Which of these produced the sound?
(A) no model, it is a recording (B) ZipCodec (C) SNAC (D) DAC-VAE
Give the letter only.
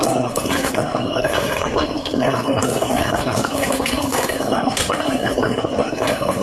C